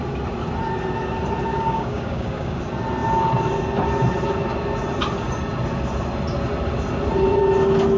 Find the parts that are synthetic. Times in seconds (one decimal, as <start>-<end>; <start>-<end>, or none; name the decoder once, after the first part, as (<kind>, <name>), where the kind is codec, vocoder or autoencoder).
1.5-2.6 (codec, DAC)